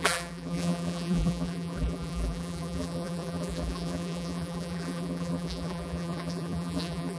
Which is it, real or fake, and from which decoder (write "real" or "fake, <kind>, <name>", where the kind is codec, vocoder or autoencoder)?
fake, vocoder, BigVGAN v2